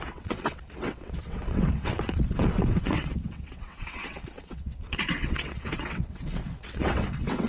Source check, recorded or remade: remade